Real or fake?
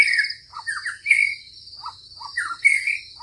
real